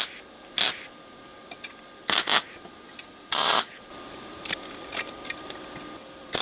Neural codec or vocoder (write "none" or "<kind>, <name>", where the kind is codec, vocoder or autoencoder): none